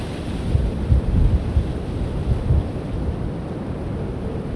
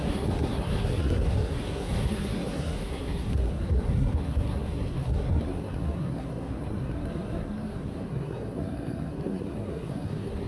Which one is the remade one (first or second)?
second